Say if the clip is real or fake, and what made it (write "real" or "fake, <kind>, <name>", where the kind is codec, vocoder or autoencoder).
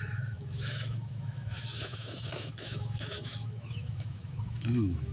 fake, autoencoder, DAC-VAE